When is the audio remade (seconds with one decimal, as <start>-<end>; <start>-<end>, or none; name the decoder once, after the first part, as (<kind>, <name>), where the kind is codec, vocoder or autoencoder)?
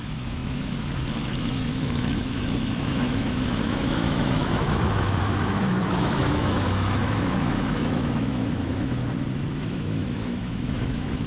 0.0-9.0 (autoencoder, DAC-VAE); 9.5-11.3